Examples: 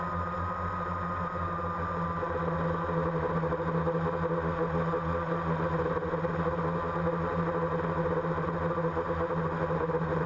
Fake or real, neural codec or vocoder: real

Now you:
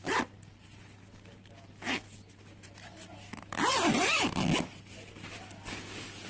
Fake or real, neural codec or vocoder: real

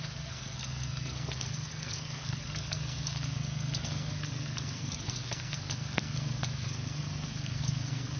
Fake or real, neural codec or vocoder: fake, codec, SNAC